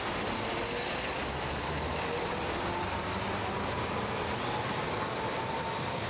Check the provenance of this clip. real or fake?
real